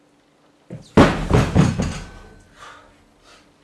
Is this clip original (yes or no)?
yes